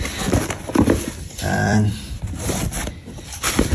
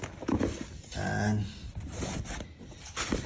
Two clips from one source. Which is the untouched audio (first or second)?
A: second